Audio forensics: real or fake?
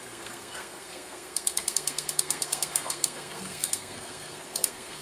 fake